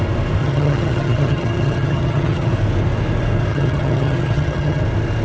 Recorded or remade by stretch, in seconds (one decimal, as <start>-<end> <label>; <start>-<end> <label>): 0.0-0.4 recorded; 0.4-2.5 remade; 2.5-3.5 recorded; 3.5-4.8 remade; 4.8-5.2 recorded